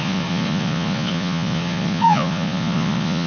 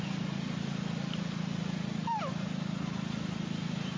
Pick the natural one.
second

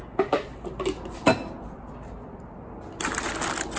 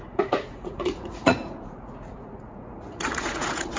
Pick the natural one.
first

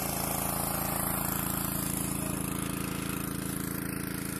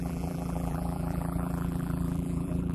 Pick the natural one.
first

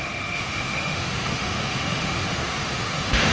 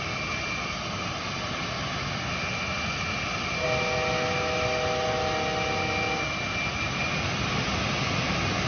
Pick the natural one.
second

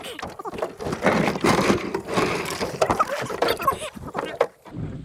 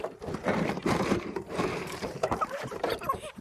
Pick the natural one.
first